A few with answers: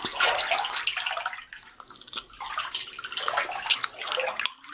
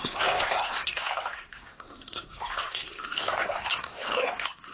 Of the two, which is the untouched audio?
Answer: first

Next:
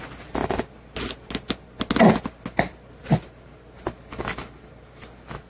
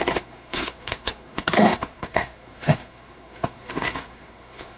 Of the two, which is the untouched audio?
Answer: first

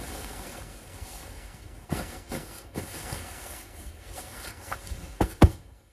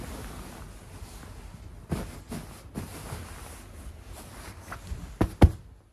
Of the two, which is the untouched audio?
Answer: second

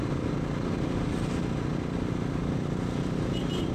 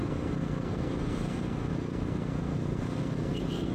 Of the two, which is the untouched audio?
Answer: first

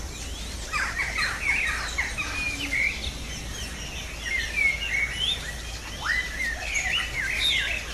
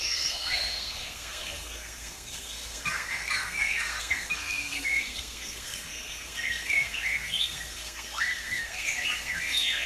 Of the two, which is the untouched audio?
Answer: first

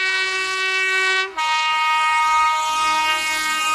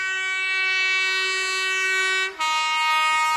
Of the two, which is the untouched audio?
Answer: second